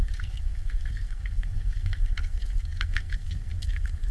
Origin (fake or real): fake